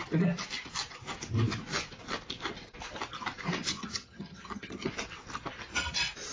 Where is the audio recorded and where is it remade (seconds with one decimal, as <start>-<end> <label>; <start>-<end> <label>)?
0.0-3.7 recorded; 3.7-4.9 remade; 4.9-6.3 recorded